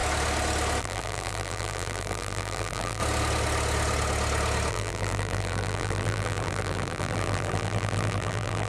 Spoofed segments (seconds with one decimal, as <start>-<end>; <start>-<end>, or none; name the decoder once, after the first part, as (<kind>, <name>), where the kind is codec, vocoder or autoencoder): 0.8-3.0 (vocoder, BigVGAN v2); 4.7-8.7